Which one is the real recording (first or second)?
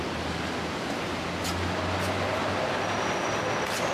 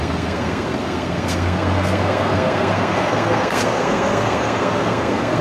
first